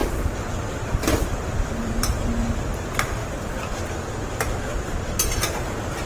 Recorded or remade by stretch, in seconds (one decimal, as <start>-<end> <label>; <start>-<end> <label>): 0.0-2.3 remade; 2.3-3.2 recorded; 3.2-3.7 remade; 3.7-6.1 recorded